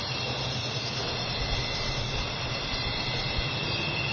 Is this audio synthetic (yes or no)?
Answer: no